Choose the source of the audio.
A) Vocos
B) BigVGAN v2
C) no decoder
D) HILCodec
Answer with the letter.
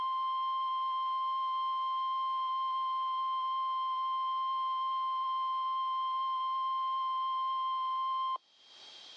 B